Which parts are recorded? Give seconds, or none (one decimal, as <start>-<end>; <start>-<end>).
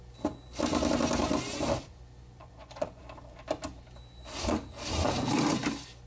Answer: 0.0-2.4; 3.0-6.1